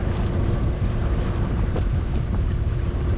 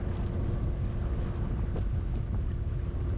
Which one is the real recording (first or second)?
second